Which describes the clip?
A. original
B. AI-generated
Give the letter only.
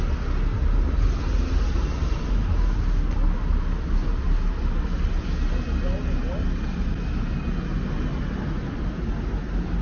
A